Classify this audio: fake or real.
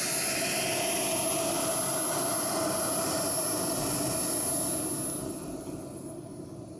real